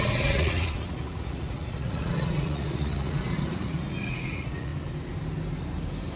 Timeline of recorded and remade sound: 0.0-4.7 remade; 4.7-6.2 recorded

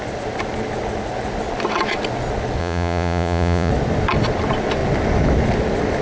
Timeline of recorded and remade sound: 0.0-2.6 recorded; 2.6-3.7 remade; 3.7-6.0 recorded

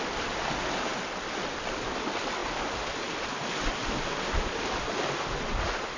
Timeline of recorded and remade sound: 0.0-6.0 recorded

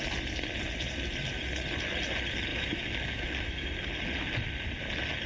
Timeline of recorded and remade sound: 0.0-2.5 recorded; 2.5-3.7 remade; 3.7-5.3 recorded

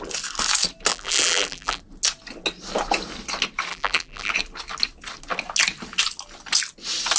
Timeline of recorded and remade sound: 0.0-0.9 recorded; 0.9-1.8 remade; 1.8-3.7 recorded; 3.7-4.3 remade; 4.3-7.2 recorded

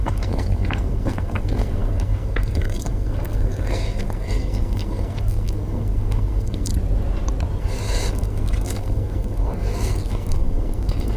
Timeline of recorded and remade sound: 0.0-6.7 remade; 6.7-7.6 recorded; 7.6-11.2 remade

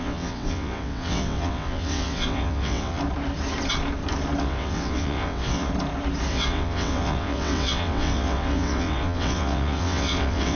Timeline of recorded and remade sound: 0.0-3.0 remade; 3.0-4.4 recorded; 4.4-5.7 remade; 5.7-6.3 recorded; 6.3-10.6 remade